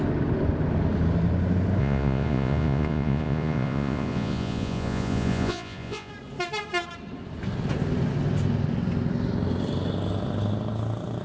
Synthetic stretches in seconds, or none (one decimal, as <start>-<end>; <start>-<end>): 1.8-6.1